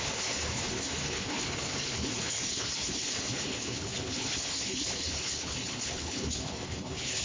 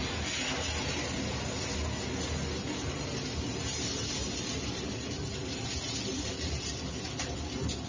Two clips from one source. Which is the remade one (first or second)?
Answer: first